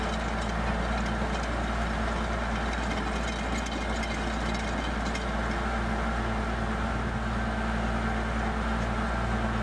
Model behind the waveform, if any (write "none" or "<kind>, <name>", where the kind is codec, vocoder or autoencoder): none